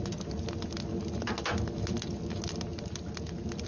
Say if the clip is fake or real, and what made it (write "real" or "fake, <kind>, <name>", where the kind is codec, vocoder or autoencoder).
real